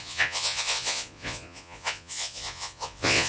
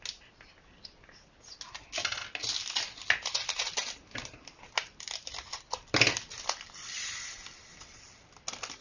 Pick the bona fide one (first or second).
second